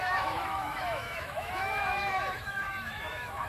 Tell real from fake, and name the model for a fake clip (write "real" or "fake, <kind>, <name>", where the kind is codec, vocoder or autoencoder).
fake, autoencoder, DAC-VAE